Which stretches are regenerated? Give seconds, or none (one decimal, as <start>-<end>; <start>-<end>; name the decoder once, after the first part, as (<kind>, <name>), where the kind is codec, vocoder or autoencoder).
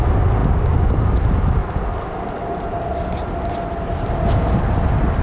none